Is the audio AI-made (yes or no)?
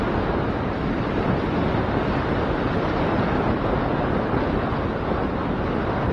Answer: no